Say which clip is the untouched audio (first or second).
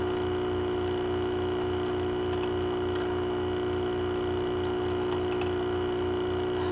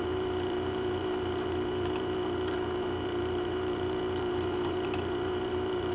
first